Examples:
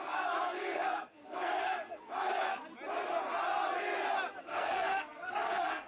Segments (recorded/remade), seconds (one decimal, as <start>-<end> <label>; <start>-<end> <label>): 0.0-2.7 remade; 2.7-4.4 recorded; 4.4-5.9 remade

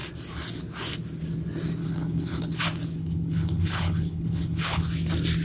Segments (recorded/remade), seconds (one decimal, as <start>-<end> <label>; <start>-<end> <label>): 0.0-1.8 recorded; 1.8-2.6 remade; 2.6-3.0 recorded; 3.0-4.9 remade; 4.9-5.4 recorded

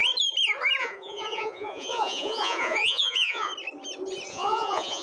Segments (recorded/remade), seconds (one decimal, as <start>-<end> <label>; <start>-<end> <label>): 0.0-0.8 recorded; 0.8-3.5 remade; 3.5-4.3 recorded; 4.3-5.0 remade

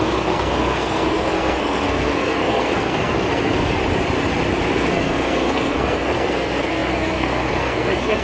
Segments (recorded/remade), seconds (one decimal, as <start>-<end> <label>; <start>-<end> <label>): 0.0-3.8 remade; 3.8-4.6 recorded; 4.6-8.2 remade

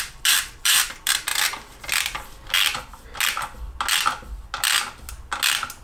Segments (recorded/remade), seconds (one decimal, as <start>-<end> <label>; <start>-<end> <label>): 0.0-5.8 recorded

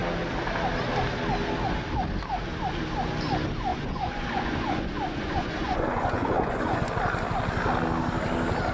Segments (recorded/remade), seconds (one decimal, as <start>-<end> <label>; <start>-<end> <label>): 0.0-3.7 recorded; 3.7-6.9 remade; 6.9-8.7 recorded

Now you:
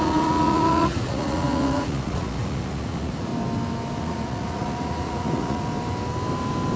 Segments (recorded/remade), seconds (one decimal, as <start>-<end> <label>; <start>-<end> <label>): 0.0-3.3 remade; 3.3-4.0 recorded; 4.0-5.7 remade; 5.7-6.8 recorded

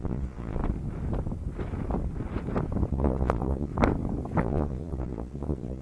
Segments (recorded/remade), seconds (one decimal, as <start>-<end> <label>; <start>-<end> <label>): 0.0-0.6 remade; 0.6-2.9 recorded; 2.9-3.7 remade; 3.7-4.4 recorded; 4.4-5.8 remade